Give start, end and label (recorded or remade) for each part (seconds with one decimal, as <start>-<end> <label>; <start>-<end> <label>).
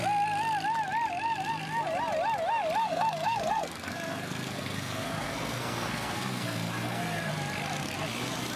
0.0-2.8 recorded; 2.8-7.3 remade; 7.3-8.6 recorded